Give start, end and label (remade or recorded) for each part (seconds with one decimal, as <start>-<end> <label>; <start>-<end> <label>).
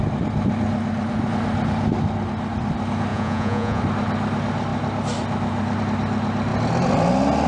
0.0-3.1 recorded; 3.1-3.8 remade; 3.8-7.5 recorded